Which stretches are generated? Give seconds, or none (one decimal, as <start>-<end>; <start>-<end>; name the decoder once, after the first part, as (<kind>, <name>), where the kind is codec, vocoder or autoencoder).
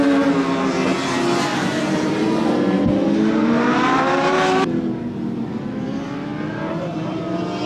1.5-6.0 (vocoder, BigVGAN v2); 6.5-7.2